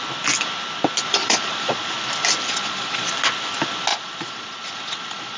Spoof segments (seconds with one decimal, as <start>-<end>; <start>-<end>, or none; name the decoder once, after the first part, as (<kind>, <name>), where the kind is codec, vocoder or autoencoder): 1.2-1.9 (vocoder, Vocos); 2.5-3.1; 3.9-5.4